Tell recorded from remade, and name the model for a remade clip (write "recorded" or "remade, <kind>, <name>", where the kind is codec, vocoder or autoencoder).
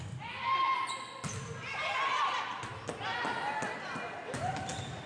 recorded